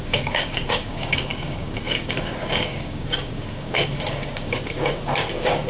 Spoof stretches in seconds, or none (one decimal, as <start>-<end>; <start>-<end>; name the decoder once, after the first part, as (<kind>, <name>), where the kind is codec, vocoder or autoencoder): 0.0-5.7 (codec, DAC)